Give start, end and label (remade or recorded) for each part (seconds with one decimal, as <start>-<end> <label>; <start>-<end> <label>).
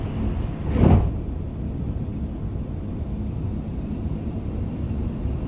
0.0-2.1 recorded; 2.1-4.5 remade; 4.5-5.5 recorded